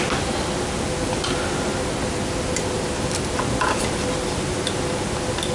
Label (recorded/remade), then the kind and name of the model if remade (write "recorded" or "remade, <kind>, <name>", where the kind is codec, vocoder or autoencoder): recorded